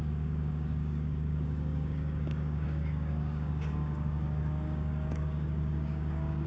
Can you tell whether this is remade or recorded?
remade